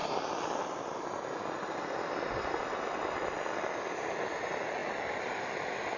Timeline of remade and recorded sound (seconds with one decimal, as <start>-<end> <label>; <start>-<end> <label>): 0.0-6.0 recorded